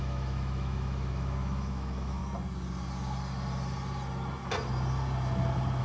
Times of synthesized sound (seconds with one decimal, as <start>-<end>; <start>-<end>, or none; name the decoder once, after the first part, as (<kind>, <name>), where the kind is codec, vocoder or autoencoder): 0.0-2.2 (autoencoder, DAC-VAE)